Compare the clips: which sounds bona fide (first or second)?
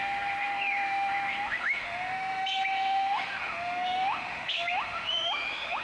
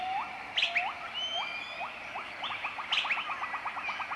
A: second